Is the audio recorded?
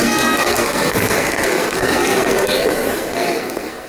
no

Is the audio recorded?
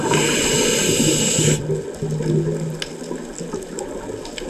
yes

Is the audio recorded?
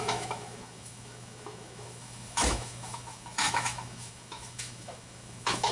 no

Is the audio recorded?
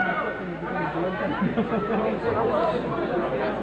yes